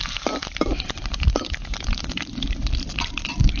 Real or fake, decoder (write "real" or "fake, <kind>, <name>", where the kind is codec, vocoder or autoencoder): real